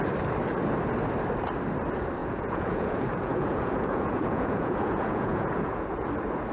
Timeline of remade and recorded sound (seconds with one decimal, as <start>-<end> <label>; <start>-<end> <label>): 0.0-2.2 recorded; 2.2-6.1 remade; 6.1-6.5 recorded